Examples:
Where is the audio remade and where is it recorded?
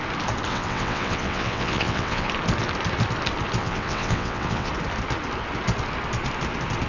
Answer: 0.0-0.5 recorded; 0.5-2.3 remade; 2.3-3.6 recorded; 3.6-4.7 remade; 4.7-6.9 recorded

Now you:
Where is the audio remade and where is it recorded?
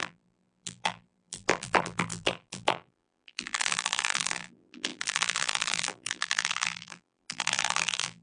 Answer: 0.0-8.2 remade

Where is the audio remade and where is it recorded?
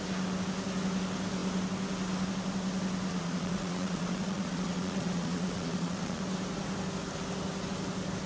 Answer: 0.0-3.1 recorded; 3.1-6.2 remade; 6.2-8.3 recorded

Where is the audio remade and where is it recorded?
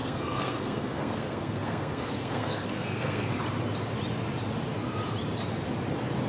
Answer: 0.0-3.4 remade; 3.4-6.3 recorded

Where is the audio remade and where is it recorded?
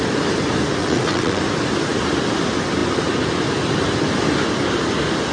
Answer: 0.0-0.8 recorded; 0.8-1.4 remade; 1.4-5.3 recorded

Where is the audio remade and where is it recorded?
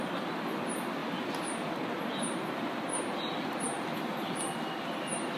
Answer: 0.0-5.4 recorded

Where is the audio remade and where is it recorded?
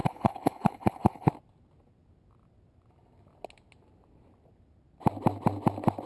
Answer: 0.0-1.3 remade; 1.3-6.1 recorded